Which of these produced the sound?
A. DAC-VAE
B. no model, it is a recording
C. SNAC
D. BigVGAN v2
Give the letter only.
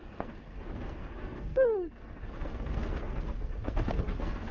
C